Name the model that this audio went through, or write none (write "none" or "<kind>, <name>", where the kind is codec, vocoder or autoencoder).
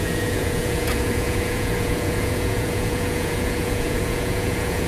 vocoder, Vocos